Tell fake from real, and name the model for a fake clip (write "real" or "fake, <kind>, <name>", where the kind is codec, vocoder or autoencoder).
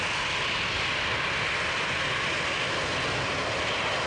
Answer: real